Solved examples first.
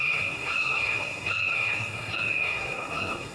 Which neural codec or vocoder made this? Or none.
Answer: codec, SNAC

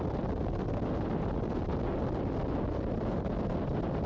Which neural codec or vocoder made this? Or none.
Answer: none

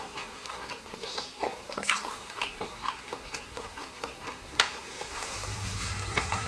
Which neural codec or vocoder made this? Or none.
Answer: codec, SNAC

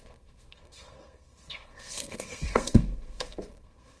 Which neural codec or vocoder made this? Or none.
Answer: codec, SNAC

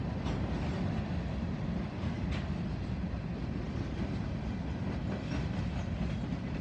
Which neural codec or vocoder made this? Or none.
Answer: none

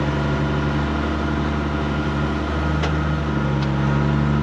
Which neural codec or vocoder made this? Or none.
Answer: none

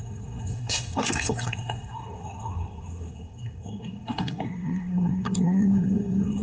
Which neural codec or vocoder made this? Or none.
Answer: codec, SNAC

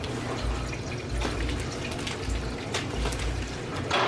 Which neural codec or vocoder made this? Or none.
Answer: none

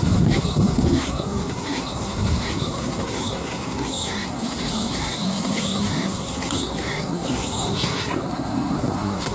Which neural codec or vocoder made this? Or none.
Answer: codec, SNAC